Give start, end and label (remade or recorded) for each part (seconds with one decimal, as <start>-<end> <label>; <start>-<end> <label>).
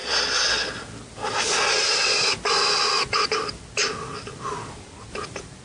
0.0-5.6 recorded